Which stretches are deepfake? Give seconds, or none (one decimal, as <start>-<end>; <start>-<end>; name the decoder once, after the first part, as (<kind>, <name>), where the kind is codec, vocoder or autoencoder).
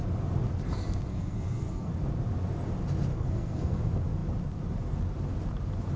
1.1-1.9 (codec, SNAC); 3.1-3.8